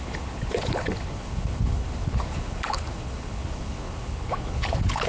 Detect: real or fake fake